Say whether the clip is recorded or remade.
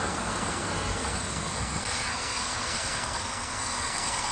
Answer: remade